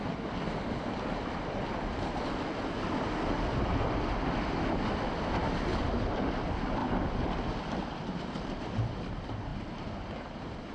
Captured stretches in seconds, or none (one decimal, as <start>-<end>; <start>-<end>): 0.0-6.8; 8.7-10.7